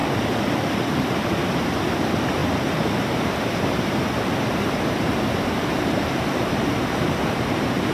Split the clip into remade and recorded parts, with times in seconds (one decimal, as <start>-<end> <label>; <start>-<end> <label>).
0.0-0.9 recorded; 0.9-7.9 remade